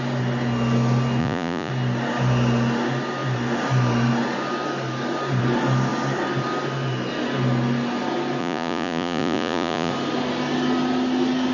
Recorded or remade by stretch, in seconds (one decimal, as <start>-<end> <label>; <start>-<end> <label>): 0.0-1.2 recorded; 1.2-1.7 remade; 1.7-8.4 recorded; 8.4-9.9 remade; 9.9-11.5 recorded